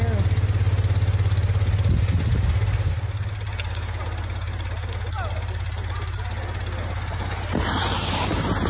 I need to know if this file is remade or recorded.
recorded